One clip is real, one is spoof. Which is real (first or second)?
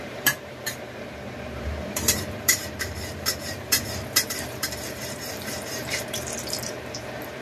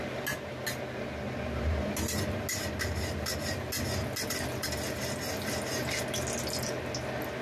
second